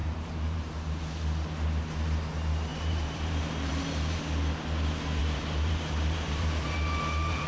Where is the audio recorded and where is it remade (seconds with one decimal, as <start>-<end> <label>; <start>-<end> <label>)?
0.0-0.7 remade; 0.7-2.7 recorded; 2.7-4.2 remade; 4.2-5.2 recorded; 5.2-7.5 remade